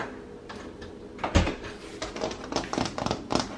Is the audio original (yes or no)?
yes